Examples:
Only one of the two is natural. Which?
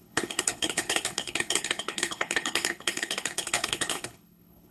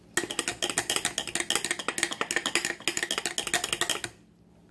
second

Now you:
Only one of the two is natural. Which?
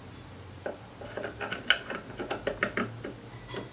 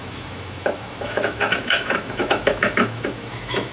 first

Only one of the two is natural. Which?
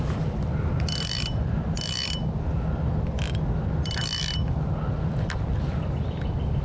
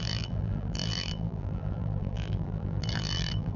first